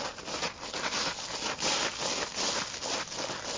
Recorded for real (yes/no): yes